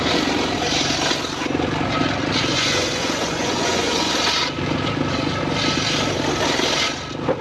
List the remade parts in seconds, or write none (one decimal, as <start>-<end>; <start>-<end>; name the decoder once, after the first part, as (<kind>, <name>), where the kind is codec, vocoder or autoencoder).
2.5-4.1 (vocoder, Vocos)

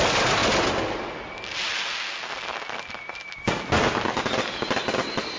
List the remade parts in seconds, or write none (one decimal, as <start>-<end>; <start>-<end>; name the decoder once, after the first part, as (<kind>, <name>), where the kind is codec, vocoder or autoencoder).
none

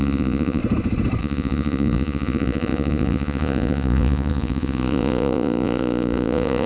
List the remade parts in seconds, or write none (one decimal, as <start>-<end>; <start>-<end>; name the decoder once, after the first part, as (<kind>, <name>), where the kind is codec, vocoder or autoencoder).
0.0-0.6 (vocoder, Vocos); 1.2-6.7

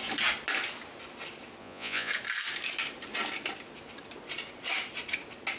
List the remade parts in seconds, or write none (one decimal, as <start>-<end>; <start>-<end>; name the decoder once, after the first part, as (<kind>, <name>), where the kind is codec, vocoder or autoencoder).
1.6-2.1 (vocoder, Vocos)